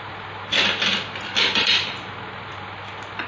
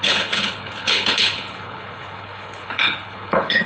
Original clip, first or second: first